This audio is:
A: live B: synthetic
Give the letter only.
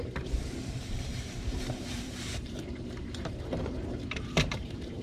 B